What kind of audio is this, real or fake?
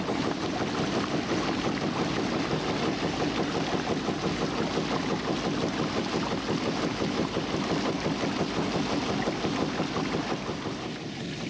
real